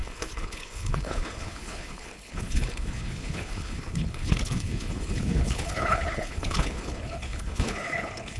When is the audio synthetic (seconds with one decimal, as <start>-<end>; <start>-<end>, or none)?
0.0-8.4